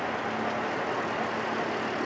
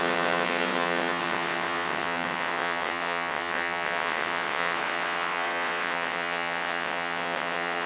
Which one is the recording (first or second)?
first